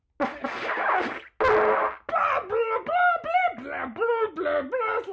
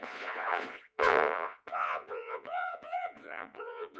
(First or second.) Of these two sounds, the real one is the first